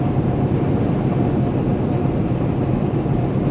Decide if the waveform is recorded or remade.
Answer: remade